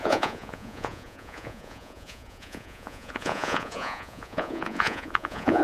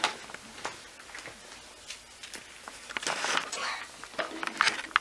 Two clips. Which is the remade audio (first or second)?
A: first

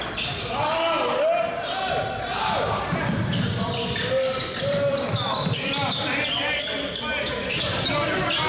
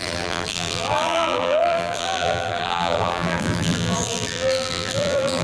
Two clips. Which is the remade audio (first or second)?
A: second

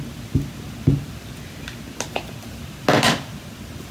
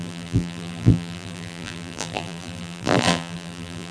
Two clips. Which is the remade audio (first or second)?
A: second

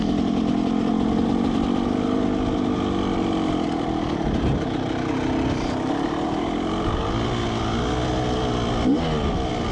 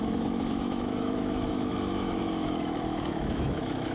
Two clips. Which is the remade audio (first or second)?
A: second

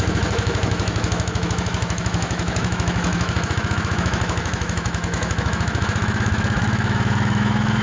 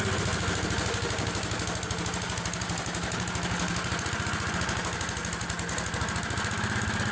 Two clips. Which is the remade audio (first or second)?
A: first